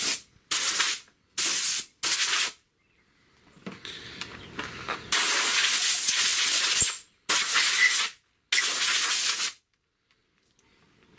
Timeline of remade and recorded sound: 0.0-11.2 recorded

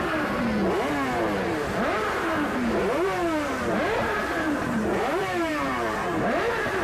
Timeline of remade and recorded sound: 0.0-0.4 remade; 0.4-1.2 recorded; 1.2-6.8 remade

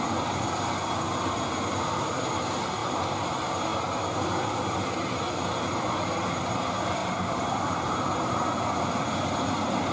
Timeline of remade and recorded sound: 0.0-2.8 recorded; 2.8-3.3 remade; 3.3-7.0 recorded; 7.0-7.9 remade; 7.9-9.9 recorded

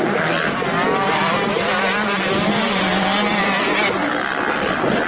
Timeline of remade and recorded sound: 0.0-1.2 remade; 1.2-2.5 recorded; 2.5-2.9 remade; 2.9-3.4 recorded; 3.4-5.1 remade